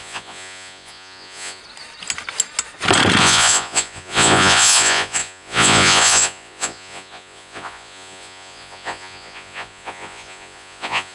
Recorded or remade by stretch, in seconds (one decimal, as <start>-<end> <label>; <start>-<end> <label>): 0.0-1.6 remade; 1.6-3.2 recorded; 3.2-11.1 remade